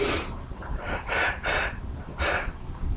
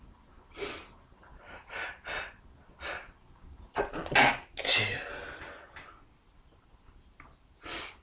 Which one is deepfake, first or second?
first